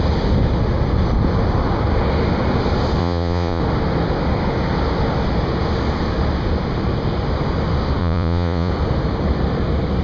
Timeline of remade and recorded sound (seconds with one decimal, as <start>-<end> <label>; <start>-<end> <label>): 0.0-3.0 recorded; 3.0-3.6 remade; 3.6-8.0 recorded; 8.0-8.7 remade; 8.7-10.0 recorded